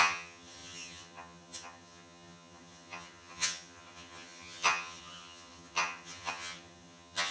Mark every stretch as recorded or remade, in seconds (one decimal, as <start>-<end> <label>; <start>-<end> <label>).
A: 0.0-7.3 remade

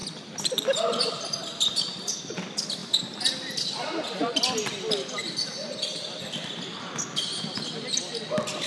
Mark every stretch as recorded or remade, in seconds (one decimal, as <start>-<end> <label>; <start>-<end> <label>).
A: 0.0-8.7 recorded